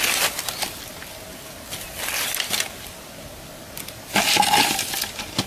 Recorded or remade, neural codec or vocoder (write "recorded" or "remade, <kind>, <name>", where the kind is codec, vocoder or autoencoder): recorded